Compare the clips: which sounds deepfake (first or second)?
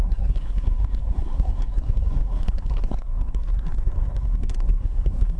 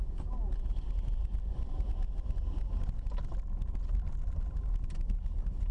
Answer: first